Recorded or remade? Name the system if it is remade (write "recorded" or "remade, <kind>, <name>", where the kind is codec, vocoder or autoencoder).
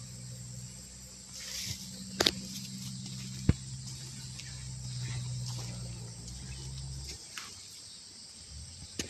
recorded